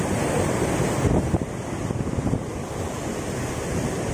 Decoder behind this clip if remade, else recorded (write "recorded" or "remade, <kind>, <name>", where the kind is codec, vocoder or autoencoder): recorded